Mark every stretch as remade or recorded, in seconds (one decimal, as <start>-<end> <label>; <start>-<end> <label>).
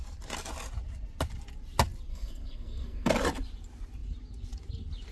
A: 0.0-2.1 recorded; 2.1-3.1 remade; 3.1-5.1 recorded